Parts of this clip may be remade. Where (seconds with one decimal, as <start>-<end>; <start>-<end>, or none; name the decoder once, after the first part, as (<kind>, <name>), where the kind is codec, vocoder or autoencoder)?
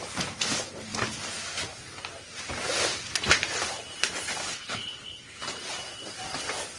4.4-5.4 (codec, HILCodec)